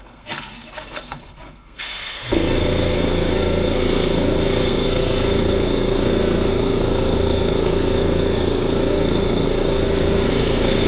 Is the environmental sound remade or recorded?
remade